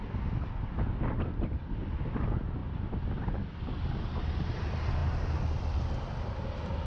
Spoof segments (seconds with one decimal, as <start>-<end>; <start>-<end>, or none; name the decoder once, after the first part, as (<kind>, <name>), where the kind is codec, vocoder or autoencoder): none